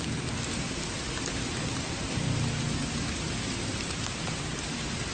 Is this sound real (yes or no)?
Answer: yes